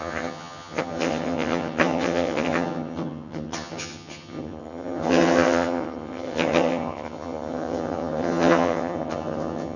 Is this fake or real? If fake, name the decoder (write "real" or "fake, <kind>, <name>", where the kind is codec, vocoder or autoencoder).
fake, vocoder, HiFi-GAN